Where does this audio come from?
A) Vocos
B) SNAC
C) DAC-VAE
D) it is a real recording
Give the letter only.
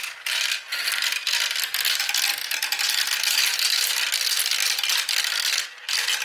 D